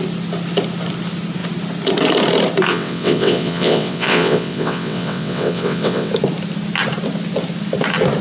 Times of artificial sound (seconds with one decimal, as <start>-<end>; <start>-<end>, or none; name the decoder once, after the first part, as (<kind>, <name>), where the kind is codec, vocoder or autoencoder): 2.7-6.1 (vocoder, WaveNeXt)